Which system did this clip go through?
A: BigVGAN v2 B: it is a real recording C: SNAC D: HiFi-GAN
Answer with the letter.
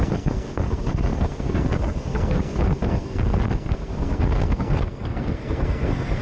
C